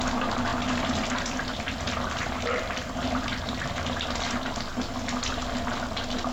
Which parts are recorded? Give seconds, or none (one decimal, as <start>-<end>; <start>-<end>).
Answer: 0.0-0.5; 4.3-6.3